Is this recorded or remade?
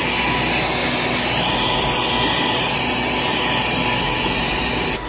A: recorded